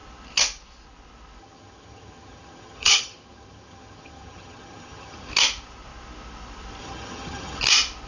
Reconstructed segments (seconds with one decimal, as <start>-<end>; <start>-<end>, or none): 1.4-5.3; 6.8-7.6